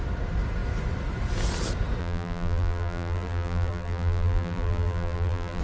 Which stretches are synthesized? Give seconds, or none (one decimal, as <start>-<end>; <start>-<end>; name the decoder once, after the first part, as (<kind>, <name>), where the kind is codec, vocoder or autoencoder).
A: 2.0-5.6 (vocoder, BigVGAN v2)